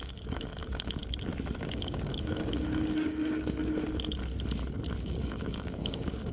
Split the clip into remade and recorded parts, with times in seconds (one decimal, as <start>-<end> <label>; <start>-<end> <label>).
0.0-1.0 remade; 1.0-1.6 recorded; 1.6-3.6 remade; 3.6-5.0 recorded; 5.0-6.3 remade